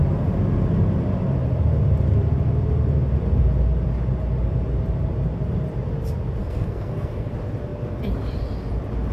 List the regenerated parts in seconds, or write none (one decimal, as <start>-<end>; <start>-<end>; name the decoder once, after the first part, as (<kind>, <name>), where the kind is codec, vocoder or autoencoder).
6.4-7.3 (codec, SNAC)

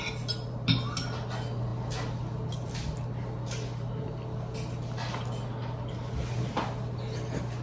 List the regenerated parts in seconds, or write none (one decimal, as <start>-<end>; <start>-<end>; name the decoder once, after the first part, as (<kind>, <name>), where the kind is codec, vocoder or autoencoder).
none

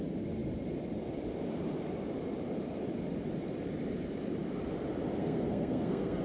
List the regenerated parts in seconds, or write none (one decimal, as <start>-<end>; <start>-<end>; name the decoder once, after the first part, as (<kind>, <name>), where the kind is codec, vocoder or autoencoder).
5.2-6.2 (codec, SNAC)

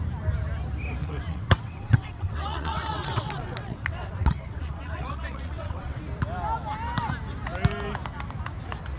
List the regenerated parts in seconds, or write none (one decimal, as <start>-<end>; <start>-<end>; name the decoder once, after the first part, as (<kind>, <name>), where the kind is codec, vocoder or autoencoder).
1.0-6.0 (vocoder, WaveNeXt)

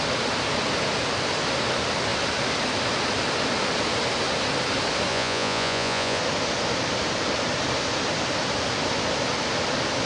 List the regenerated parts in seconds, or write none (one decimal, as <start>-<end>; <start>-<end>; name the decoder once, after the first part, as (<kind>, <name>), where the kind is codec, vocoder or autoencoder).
5.1-6.2 (vocoder, Vocos)

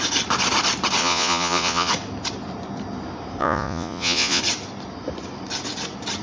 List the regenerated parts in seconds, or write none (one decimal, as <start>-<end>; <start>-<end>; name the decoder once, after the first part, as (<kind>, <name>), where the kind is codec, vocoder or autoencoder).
1.0-1.9 (vocoder, Vocos); 3.4-4.4